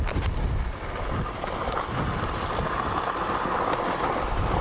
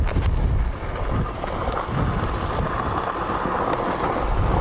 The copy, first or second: first